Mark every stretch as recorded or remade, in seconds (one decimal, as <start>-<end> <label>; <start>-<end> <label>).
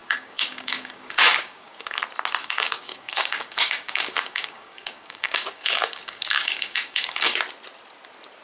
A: 0.0-2.0 remade; 2.0-2.4 recorded; 2.4-7.4 remade; 7.4-8.4 recorded